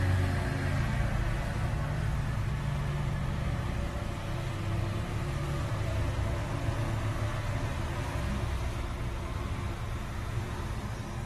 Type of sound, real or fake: real